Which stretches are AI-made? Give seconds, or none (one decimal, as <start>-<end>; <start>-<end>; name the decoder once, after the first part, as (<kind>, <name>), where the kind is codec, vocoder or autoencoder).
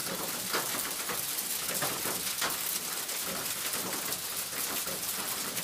none